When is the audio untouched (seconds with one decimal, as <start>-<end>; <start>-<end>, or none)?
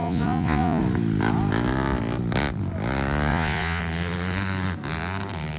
0.8-3.3; 3.8-5.6